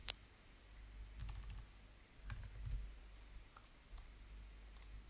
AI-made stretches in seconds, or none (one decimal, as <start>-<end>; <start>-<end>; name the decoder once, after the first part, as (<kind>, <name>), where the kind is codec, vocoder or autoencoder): none